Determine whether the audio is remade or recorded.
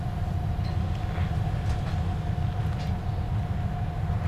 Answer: recorded